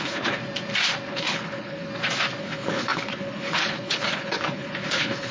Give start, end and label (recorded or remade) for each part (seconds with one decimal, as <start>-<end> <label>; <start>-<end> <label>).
0.0-0.4 remade; 0.4-1.1 recorded; 1.1-1.9 remade; 1.9-2.4 recorded; 2.4-5.3 remade